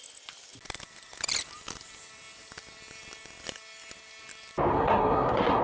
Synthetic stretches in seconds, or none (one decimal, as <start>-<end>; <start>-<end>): 4.7-5.6